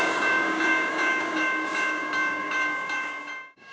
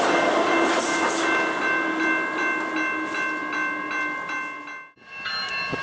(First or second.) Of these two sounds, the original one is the second